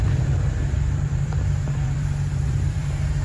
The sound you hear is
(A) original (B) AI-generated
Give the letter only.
B